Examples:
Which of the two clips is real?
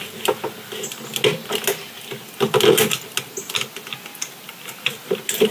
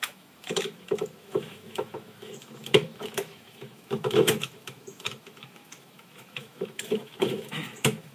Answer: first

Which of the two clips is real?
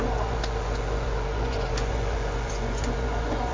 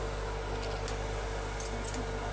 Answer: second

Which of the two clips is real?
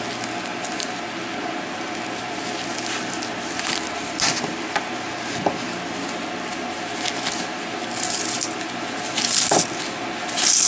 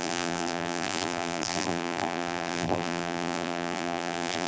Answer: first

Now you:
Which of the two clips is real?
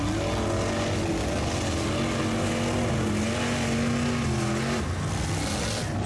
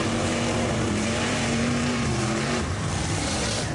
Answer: first